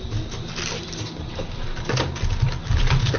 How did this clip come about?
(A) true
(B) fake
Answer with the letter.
A